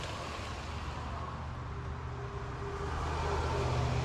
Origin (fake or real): real